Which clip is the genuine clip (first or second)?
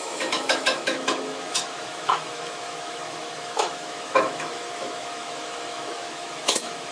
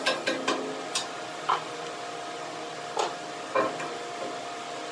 second